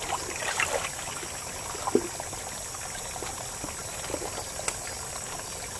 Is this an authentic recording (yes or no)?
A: yes